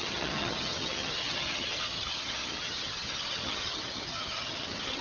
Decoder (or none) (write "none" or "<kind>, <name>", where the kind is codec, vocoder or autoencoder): vocoder, HiFi-GAN